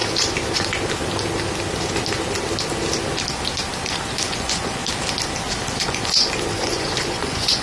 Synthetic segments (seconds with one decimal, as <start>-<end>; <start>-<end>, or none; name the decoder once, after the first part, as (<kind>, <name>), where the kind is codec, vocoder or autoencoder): 4.1-4.8 (vocoder, Vocos); 5.8-7.6